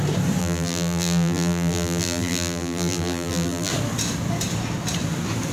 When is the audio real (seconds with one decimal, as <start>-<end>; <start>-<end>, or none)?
0.0-0.4; 3.7-5.5